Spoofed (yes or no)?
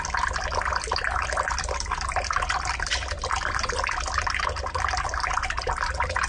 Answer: no